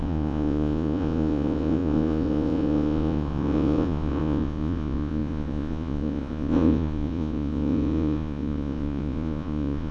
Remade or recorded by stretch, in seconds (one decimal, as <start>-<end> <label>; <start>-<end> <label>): 0.0-9.9 remade